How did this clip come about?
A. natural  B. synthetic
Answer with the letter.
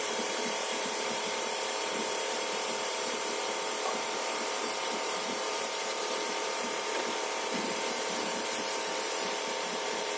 B